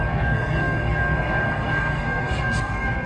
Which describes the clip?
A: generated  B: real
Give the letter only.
A